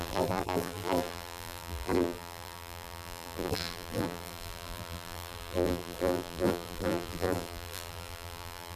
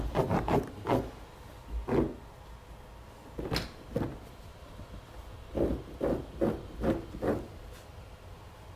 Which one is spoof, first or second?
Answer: first